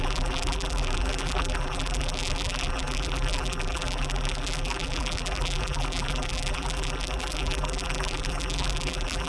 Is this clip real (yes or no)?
no